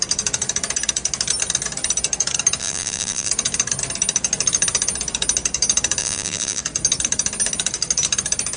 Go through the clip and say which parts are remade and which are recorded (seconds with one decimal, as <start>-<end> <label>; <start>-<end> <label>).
0.0-2.6 recorded; 2.6-3.3 remade; 3.3-6.0 recorded; 6.0-6.6 remade; 6.6-8.6 recorded